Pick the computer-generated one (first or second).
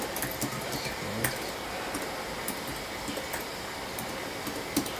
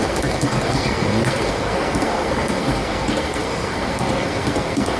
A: second